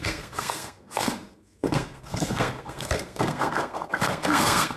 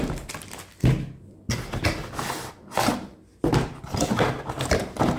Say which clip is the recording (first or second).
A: second